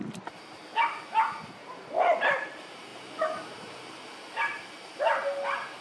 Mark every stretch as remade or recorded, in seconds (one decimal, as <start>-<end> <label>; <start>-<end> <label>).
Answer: 0.0-5.8 remade